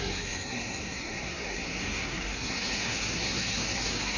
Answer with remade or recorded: remade